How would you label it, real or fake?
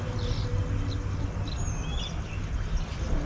real